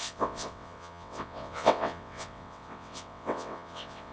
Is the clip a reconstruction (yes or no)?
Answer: yes